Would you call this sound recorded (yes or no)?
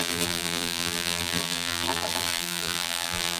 no